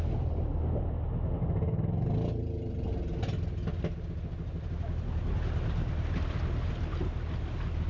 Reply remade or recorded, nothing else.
recorded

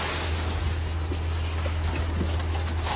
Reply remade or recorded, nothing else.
recorded